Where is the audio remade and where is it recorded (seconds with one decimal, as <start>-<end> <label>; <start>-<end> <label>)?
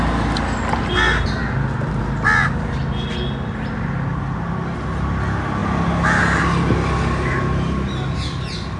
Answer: 0.0-1.4 recorded; 1.4-2.0 remade; 2.0-8.8 recorded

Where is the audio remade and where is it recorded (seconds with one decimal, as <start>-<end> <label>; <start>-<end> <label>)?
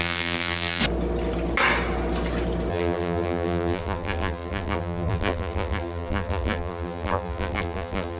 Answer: 0.0-0.8 remade; 0.8-2.7 recorded; 2.7-8.2 remade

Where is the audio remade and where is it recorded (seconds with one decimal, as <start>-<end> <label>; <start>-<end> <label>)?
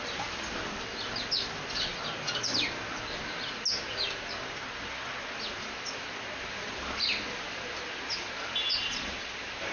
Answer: 0.0-9.7 recorded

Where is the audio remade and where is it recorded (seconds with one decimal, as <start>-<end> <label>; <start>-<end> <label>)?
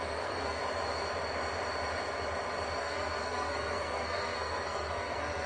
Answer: 0.0-0.6 remade; 0.6-2.8 recorded; 2.8-5.5 remade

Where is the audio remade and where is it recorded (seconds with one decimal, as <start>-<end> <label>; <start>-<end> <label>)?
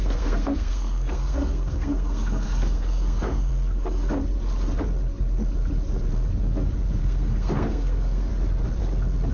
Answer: 0.0-3.5 remade; 3.5-7.0 recorded; 7.0-8.3 remade; 8.3-9.3 recorded